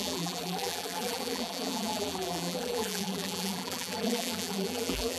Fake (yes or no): yes